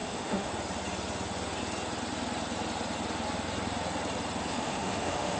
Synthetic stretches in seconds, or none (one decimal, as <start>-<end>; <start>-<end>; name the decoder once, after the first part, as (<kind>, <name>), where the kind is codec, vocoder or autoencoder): 0.0-0.5 (autoencoder, DAC-VAE); 4.5-5.4